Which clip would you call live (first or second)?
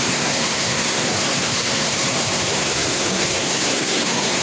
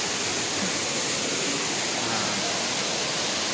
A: second